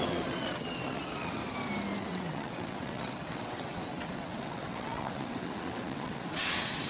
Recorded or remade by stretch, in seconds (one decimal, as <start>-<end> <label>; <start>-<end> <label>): 0.0-1.4 remade; 1.4-2.0 recorded; 2.0-6.9 remade